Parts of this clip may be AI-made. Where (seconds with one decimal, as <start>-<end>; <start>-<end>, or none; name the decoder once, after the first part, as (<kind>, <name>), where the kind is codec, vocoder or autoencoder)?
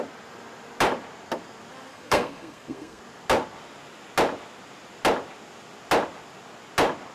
1.9-3.0 (codec, SNAC)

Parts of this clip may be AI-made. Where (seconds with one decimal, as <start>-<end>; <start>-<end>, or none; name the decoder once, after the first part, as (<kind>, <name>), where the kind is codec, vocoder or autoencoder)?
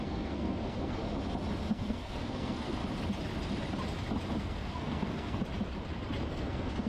0.0-1.0 (codec, SNAC); 1.7-2.8; 4.4-5.4; 6.3-6.9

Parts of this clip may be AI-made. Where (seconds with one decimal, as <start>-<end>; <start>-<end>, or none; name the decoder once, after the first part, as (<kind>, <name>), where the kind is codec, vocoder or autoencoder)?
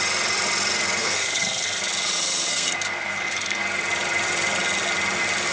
1.0-1.8 (codec, SNAC); 2.5-3.6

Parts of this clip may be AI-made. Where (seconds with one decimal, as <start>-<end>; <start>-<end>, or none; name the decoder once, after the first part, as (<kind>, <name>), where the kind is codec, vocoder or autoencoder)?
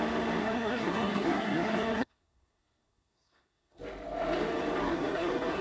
0.4-3.8 (codec, SNAC); 4.8-5.6